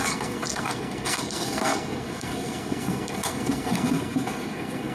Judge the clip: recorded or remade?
remade